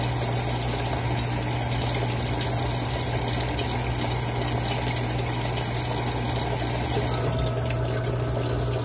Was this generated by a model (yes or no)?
no